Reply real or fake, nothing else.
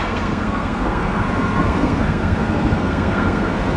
fake